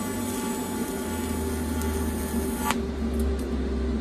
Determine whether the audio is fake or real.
real